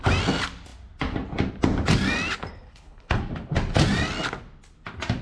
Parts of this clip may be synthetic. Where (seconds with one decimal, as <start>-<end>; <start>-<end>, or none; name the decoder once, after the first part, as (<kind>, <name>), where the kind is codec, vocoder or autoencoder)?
2.5-3.2 (codec, HILCodec)